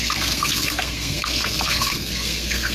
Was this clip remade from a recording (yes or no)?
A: yes